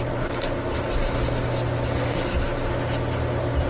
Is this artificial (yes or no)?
no